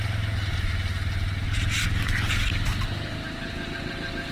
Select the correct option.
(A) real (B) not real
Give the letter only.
A